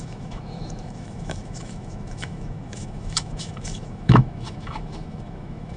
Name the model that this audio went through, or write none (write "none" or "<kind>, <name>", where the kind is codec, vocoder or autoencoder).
autoencoder, DAC-VAE